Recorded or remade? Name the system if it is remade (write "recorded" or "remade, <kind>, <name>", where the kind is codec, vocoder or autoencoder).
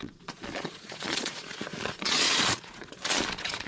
remade, vocoder, Vocos